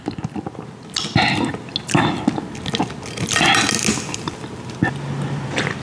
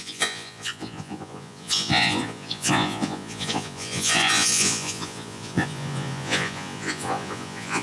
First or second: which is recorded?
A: first